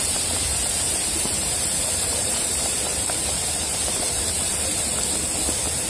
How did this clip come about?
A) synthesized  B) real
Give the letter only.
A